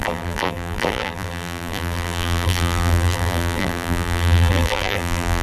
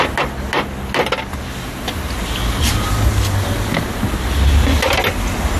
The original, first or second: second